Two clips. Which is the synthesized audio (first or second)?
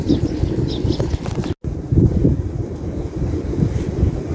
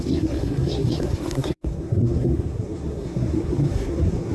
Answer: second